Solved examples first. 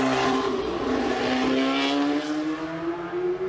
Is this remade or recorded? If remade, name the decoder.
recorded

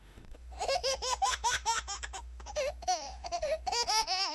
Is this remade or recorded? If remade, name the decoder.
remade, autoencoder, DAC-VAE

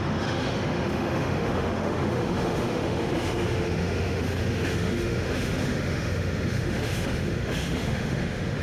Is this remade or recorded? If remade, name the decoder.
remade, autoencoder, DAC-VAE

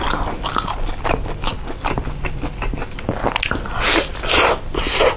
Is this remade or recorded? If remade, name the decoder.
recorded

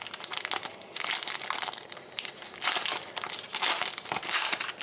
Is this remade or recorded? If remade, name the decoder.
recorded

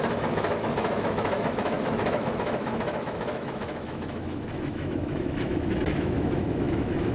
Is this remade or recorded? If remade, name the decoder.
remade, autoencoder, DAC-VAE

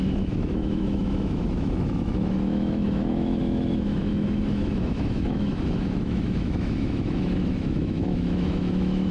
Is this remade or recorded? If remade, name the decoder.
remade, autoencoder, DAC-VAE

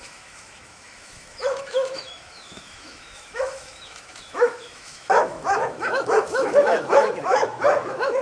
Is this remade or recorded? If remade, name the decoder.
remade, autoencoder, DAC-VAE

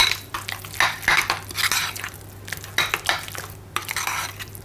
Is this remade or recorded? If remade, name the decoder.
recorded